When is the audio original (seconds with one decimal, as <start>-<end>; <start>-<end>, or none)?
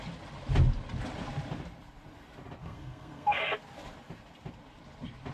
0.0-2.6; 3.4-5.3